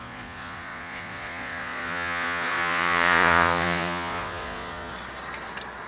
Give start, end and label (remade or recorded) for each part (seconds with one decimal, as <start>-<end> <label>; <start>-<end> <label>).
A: 0.0-4.9 remade; 4.9-5.9 recorded